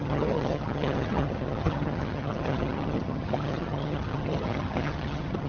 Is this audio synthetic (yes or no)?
yes